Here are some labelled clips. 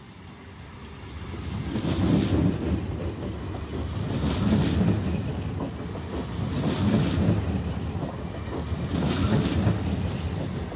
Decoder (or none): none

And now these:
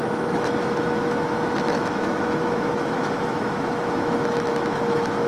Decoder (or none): autoencoder, DAC-VAE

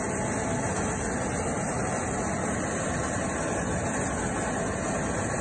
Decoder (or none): none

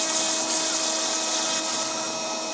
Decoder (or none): none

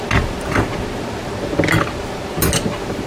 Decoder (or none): none